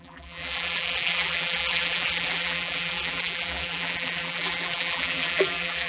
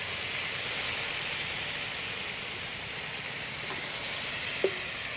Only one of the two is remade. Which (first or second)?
first